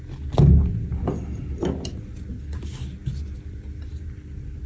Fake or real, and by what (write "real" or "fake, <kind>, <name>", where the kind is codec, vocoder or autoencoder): real